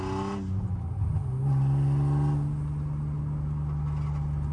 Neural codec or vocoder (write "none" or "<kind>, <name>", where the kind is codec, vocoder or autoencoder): none